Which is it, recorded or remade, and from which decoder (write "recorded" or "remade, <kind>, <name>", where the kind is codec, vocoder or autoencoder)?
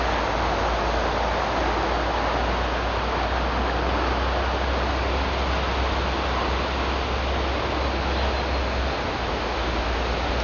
recorded